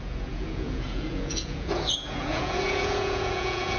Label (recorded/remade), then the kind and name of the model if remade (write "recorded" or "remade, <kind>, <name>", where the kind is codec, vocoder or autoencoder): remade, vocoder, Vocos